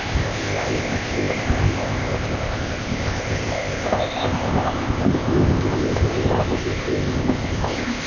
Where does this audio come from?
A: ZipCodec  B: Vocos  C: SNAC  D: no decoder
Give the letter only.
A